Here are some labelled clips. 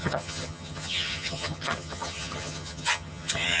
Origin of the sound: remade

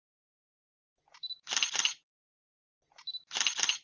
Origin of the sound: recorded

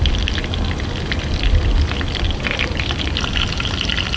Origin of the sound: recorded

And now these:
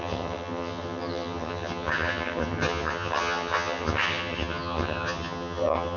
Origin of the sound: remade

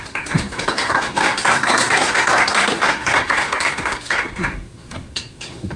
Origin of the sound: remade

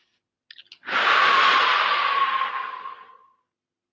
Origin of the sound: recorded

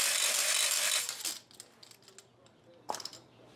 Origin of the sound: recorded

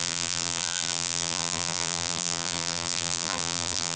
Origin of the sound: remade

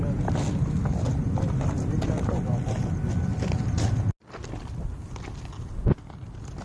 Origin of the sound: recorded